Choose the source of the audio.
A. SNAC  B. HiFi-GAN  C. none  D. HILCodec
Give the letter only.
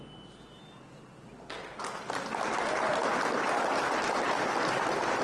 C